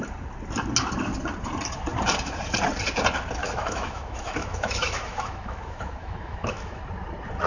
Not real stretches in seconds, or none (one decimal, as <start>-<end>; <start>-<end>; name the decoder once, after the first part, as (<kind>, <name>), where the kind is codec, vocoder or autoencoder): 3.4-6.8 (autoencoder, DAC-VAE)